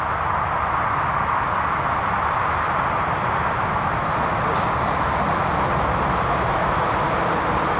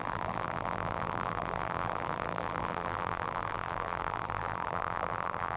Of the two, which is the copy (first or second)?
second